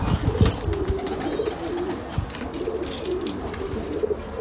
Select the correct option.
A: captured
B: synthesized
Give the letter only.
A